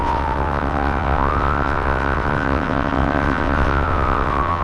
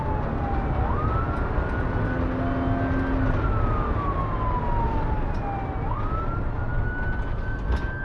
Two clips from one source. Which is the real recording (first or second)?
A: second